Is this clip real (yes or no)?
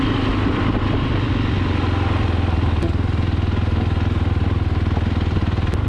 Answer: yes